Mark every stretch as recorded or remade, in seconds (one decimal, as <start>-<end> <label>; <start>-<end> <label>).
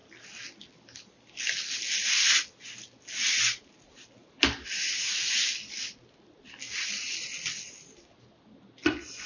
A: 0.0-9.3 recorded